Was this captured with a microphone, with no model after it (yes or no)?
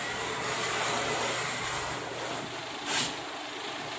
no